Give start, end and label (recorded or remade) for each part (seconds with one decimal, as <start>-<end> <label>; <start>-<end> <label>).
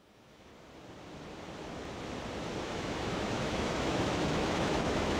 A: 0.0-0.5 remade; 0.5-2.6 recorded; 2.6-5.2 remade